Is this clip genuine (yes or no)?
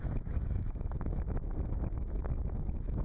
no